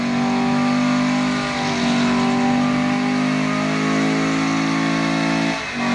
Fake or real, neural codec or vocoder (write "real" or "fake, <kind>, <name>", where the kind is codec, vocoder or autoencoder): real